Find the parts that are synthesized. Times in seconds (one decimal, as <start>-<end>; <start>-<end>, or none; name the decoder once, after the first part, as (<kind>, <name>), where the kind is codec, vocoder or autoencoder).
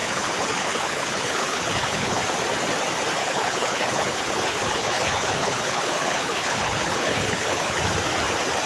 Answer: 0.0-2.2 (codec, HILCodec); 3.2-7.8